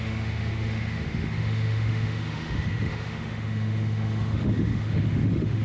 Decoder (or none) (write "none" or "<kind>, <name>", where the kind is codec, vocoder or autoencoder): autoencoder, DAC-VAE